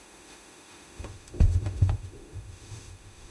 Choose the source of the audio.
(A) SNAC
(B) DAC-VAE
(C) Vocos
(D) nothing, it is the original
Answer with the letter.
B